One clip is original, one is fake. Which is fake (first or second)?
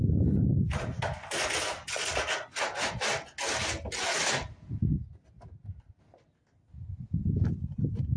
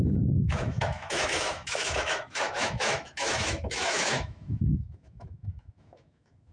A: second